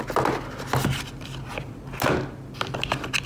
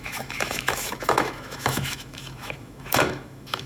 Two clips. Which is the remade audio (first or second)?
second